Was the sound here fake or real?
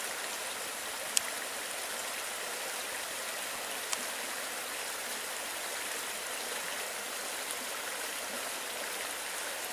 real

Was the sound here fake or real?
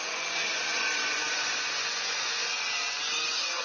fake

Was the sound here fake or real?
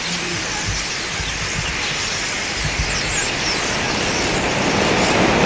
real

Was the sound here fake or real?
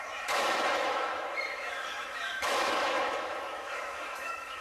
fake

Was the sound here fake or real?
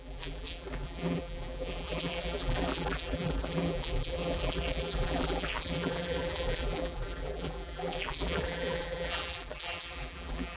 fake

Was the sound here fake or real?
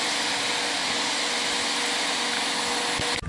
real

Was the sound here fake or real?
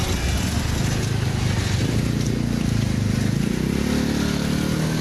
real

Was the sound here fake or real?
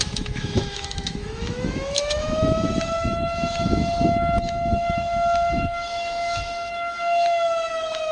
fake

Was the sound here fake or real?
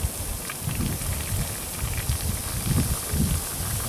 real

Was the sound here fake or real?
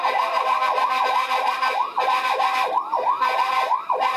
real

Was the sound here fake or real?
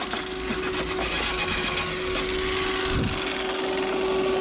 real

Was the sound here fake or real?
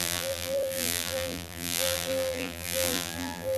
fake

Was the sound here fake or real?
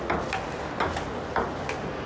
real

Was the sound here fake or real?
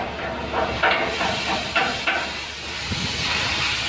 fake